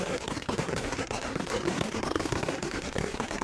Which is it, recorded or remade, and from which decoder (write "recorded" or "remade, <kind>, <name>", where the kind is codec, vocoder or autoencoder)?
remade, codec, SNAC